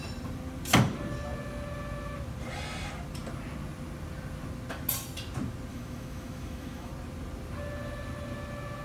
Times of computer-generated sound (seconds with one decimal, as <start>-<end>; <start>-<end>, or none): 5.7-6.9